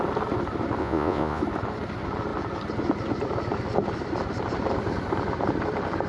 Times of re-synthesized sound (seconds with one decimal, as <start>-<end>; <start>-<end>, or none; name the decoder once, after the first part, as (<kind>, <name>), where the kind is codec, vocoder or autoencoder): 0.8-1.4 (vocoder, Vocos)